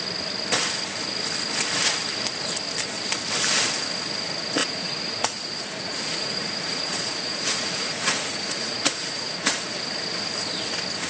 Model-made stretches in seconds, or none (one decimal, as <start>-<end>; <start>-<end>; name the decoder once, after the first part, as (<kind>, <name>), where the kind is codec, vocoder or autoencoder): 4.6-9.5 (vocoder, Vocos)